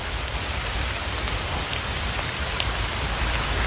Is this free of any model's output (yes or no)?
no